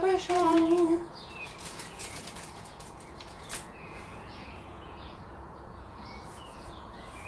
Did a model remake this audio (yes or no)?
yes